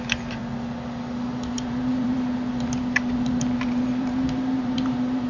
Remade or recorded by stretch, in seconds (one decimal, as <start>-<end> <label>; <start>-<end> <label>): 0.0-0.4 remade; 0.4-1.5 recorded; 1.5-5.3 remade